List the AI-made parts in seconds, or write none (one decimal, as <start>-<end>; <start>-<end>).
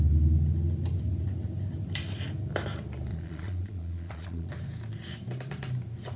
3.1-4.5